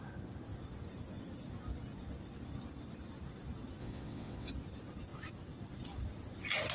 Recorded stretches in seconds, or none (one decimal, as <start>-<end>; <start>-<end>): 0.0-3.8; 4.5-6.7